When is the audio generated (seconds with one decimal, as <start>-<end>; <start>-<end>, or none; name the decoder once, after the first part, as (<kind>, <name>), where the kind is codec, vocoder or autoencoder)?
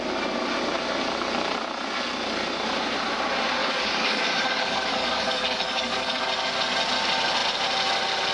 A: 3.6-6.2 (codec, DAC)